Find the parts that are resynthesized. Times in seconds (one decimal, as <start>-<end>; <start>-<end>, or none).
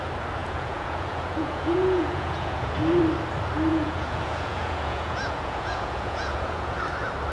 0.4-2.7; 3.7-6.8